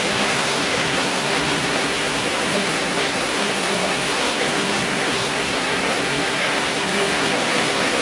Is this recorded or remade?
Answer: remade